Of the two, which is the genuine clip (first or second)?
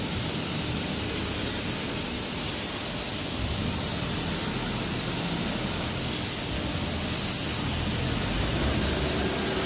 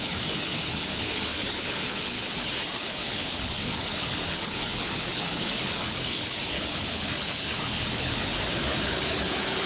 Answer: first